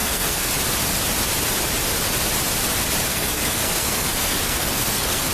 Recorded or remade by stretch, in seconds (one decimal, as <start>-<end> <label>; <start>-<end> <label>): 0.0-0.5 remade; 0.5-3.1 recorded; 3.1-5.3 remade